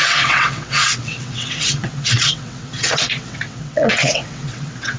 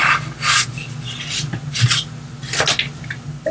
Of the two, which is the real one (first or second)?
second